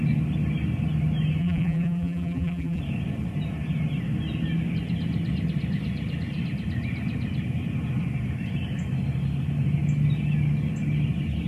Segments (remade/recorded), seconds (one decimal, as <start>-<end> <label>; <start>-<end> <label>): 0.0-1.4 recorded; 1.4-2.8 remade; 2.8-11.5 recorded